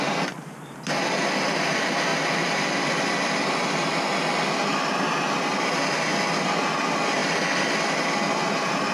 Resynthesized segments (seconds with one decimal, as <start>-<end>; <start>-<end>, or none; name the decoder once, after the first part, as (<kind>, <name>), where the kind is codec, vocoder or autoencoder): none